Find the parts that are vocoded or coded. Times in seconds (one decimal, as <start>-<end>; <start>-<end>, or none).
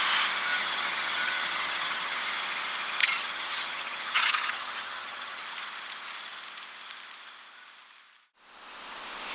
0.5-2.2; 3.0-5.4